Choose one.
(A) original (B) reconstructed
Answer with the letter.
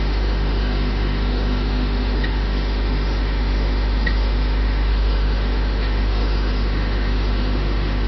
B